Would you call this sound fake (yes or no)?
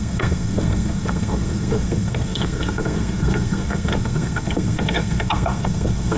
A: yes